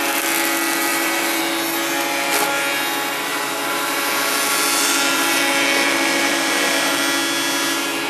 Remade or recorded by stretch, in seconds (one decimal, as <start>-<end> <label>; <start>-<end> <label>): 0.0-0.9 recorded; 0.9-1.4 remade; 1.4-3.3 recorded; 3.3-7.0 remade; 7.0-8.1 recorded